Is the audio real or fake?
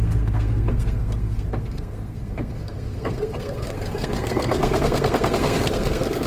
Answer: fake